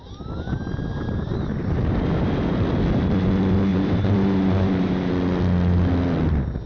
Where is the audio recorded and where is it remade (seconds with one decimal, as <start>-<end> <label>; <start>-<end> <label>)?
0.0-0.9 recorded; 0.9-2.0 remade; 2.0-3.7 recorded; 3.7-5.1 remade; 5.1-6.7 recorded